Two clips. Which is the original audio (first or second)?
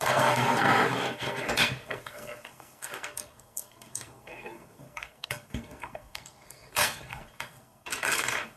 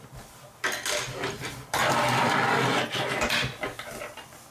second